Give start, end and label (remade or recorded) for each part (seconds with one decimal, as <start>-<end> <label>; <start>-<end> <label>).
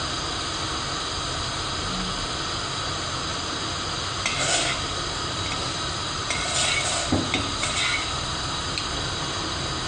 0.0-9.9 recorded